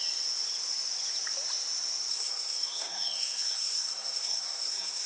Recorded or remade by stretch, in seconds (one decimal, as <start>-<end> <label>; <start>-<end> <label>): 0.0-2.1 recorded; 2.1-5.1 remade